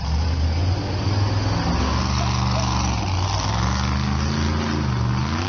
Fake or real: real